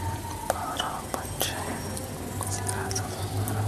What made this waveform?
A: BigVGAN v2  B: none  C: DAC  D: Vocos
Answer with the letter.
B